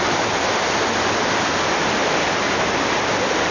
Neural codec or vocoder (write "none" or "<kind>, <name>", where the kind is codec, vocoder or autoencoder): none